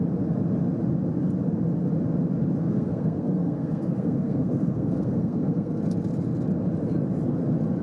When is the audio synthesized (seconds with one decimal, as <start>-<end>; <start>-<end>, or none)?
2.6-5.8